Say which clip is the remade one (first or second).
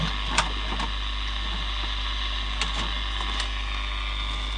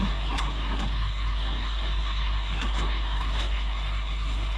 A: second